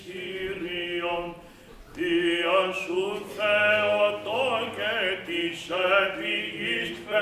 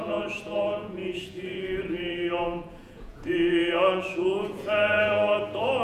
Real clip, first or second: first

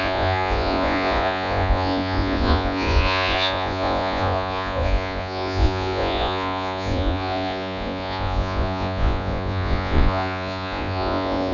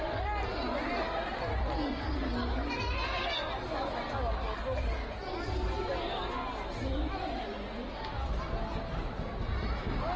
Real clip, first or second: second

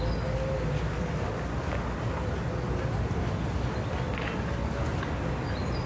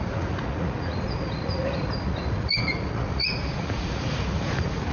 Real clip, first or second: first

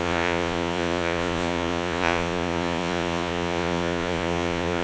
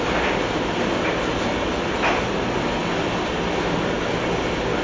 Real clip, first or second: second